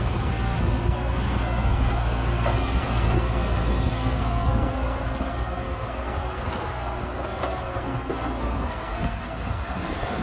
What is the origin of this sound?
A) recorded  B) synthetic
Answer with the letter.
B